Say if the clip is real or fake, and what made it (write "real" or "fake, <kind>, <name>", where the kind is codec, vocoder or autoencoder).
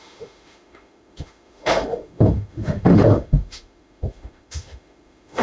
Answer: fake, autoencoder, DAC-VAE